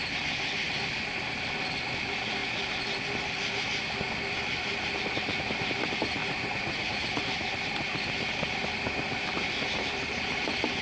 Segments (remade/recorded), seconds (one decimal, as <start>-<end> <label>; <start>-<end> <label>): 0.0-6.2 recorded; 6.2-7.2 remade; 7.2-10.8 recorded